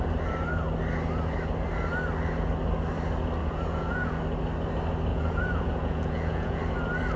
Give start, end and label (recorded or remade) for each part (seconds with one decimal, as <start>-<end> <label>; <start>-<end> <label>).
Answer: 0.0-3.4 recorded; 3.4-4.2 remade; 4.2-5.1 recorded; 5.1-6.6 remade; 6.6-7.2 recorded